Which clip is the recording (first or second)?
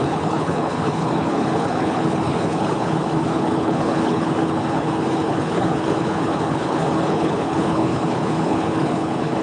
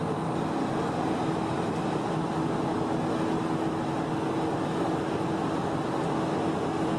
second